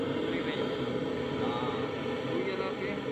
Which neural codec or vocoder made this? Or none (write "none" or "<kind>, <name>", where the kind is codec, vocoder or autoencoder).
none